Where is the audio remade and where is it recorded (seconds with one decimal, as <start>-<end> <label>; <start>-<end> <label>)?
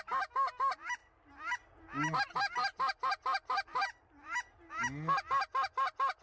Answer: 0.0-6.2 recorded